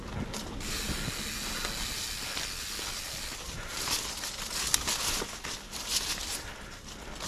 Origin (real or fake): real